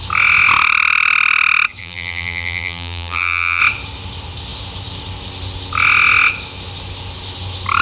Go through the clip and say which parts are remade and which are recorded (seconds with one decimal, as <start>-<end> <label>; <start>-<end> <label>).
0.0-1.8 recorded; 1.8-3.6 remade; 3.6-7.8 recorded